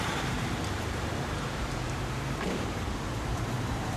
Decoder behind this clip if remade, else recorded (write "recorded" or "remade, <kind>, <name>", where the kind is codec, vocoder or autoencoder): remade, vocoder, BigVGAN v2